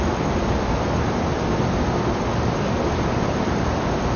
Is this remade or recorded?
recorded